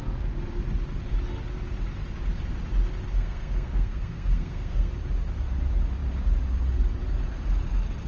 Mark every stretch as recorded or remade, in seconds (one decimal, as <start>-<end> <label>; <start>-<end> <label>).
0.0-3.1 recorded; 3.1-4.9 remade; 4.9-8.1 recorded